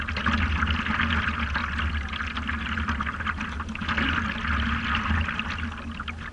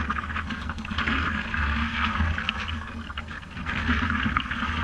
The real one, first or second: first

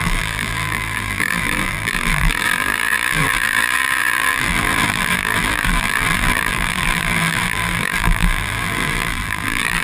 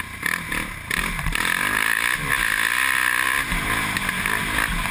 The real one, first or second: second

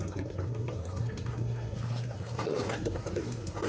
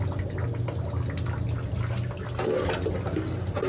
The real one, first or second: second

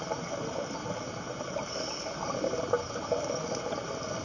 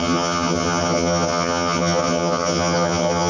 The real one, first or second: first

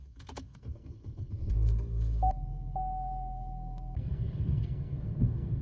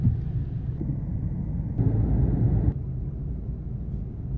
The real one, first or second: second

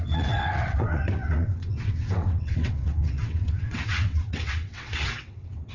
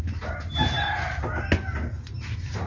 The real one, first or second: second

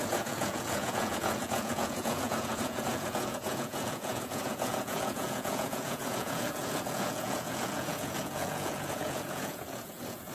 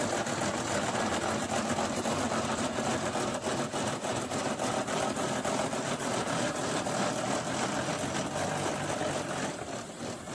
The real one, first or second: second